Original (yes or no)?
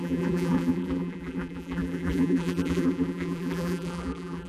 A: no